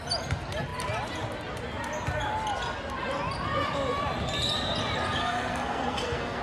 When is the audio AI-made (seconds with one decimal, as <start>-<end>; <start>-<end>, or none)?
5.2-6.4